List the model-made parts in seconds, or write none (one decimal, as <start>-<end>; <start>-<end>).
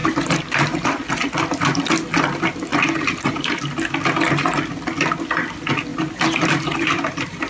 0.0-1.0; 5.9-7.5